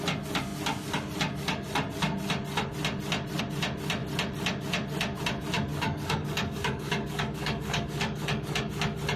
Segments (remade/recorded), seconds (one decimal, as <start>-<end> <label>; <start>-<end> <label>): 0.0-5.7 recorded; 5.7-8.7 remade; 8.7-9.2 recorded